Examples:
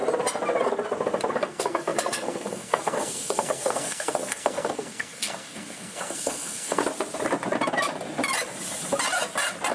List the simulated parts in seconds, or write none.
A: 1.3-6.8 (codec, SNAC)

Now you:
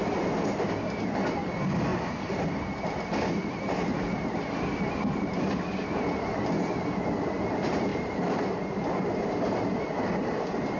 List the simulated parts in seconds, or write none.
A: 1.9-2.5 (vocoder, BigVGAN v2); 7.9-9.9

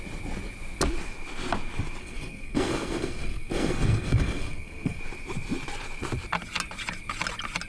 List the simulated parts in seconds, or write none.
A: 2.0-5.0 (codec, SNAC)

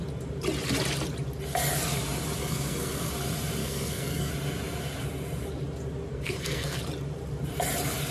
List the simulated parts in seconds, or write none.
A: 2.4-3.1 (codec, SNAC); 3.6-4.3; 6.1-6.8

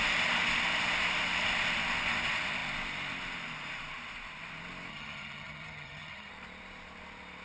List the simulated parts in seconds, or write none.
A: 4.9-6.3 (vocoder, HiFi-GAN)

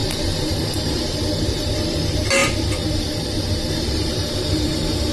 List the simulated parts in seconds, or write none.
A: 0.0-5.1 (vocoder, BigVGAN v2)

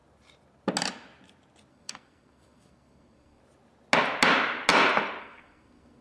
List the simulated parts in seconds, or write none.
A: 1.7-3.4 (codec, SNAC); 5.2-6.0

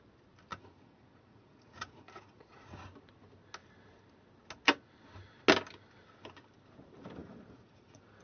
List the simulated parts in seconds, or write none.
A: 0.5-2.8 (vocoder, Vocos); 7.2-8.2